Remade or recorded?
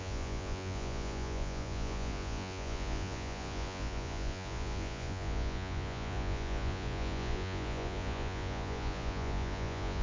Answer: remade